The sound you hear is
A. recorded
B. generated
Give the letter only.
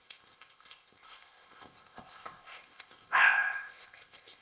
B